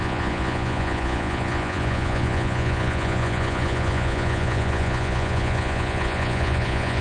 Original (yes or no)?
no